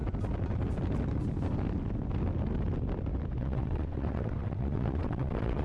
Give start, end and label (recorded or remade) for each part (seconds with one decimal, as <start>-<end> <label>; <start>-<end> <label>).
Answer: 0.0-3.4 recorded; 3.4-5.6 remade